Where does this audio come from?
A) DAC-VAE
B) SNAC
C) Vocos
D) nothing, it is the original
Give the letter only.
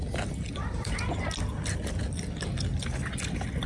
D